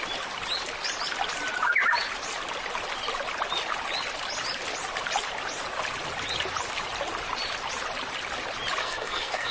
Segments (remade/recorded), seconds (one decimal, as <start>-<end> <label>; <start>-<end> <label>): 0.0-8.8 recorded; 8.8-9.5 remade

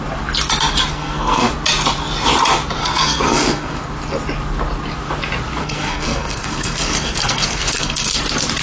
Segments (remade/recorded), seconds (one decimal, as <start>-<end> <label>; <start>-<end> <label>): 0.0-0.9 recorded; 0.9-1.5 remade; 1.5-2.8 recorded; 2.8-3.8 remade; 3.8-5.6 recorded; 5.6-8.2 remade; 8.2-8.6 recorded

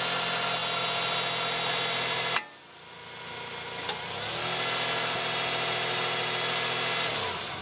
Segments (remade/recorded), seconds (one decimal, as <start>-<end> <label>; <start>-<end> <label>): 0.0-7.6 recorded

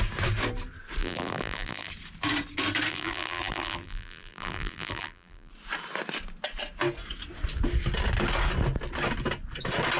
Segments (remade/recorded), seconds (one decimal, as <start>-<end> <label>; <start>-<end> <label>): 0.0-1.0 recorded; 1.0-1.9 remade; 1.9-2.9 recorded; 2.9-5.5 remade; 5.5-10.0 recorded

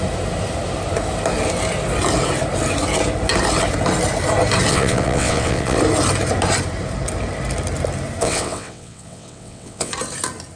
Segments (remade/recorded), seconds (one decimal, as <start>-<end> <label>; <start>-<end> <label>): 0.0-4.7 recorded; 4.7-5.8 remade; 5.8-8.2 recorded; 8.2-9.9 remade; 9.9-10.6 recorded

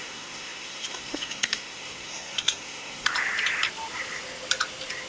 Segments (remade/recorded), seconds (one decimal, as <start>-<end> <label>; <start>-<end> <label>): 0.0-3.1 remade; 3.1-5.1 recorded